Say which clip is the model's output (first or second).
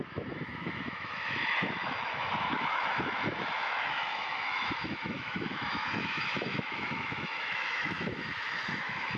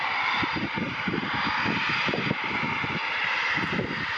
first